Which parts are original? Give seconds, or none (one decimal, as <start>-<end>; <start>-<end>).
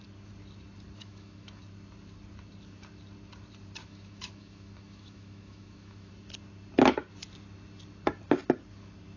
0.0-1.0; 1.6-3.8; 6.1-9.2